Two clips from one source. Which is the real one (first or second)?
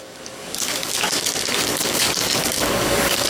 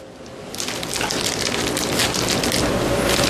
second